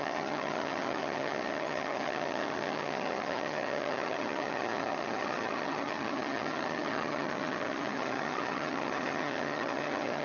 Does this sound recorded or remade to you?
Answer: remade